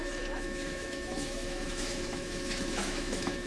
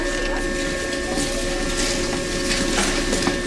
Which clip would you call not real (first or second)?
first